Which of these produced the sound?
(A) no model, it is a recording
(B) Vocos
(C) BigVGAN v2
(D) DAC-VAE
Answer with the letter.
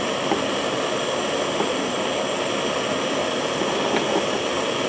A